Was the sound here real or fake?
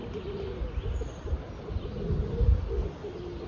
real